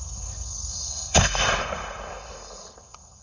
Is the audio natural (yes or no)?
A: no